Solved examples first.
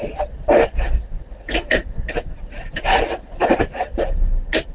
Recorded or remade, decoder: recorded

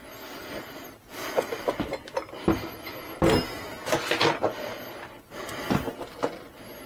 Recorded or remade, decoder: recorded